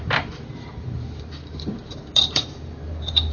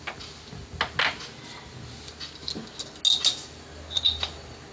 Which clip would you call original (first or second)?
second